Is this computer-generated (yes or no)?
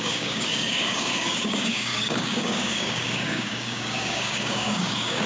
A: yes